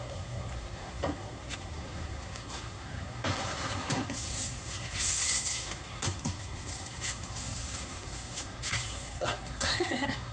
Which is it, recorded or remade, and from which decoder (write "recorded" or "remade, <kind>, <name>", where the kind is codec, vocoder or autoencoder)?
remade, codec, SNAC